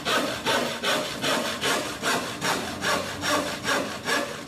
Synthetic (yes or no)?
no